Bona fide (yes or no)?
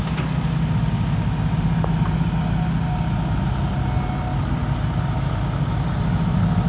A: yes